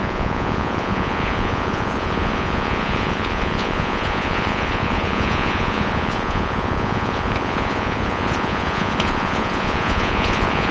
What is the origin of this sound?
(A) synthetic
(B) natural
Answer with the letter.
A